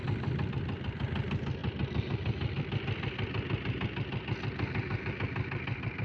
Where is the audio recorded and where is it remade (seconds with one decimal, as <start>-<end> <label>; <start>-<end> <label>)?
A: 0.0-6.0 recorded